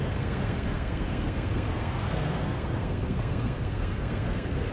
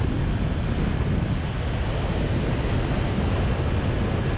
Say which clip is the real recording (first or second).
second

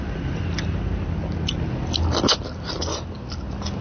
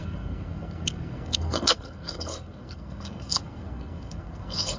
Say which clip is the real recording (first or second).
first